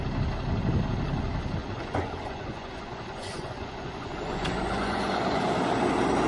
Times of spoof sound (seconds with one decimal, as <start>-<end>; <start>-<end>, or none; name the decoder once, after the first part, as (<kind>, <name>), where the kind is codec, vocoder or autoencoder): 1.6-5.4 (vocoder, Vocos)